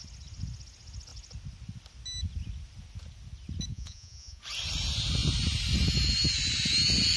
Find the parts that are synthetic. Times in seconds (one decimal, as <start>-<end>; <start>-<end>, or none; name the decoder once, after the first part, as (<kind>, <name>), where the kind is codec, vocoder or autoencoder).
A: 3.7-4.4 (vocoder, Vocos)